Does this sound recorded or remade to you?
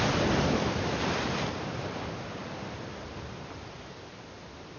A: recorded